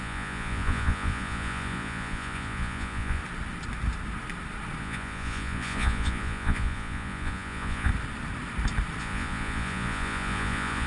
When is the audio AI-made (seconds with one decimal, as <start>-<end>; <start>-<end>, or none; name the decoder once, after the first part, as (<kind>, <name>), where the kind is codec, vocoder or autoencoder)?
0.0-3.2 (vocoder, Vocos); 4.8-7.9; 9.0-10.9